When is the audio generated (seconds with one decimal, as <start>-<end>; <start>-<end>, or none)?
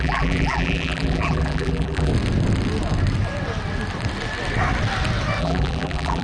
0.0-2.1; 5.4-6.2